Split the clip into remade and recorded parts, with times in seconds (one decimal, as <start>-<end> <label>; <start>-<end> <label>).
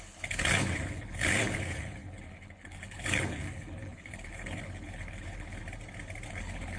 0.0-5.6 remade; 5.6-6.3 recorded; 6.3-6.8 remade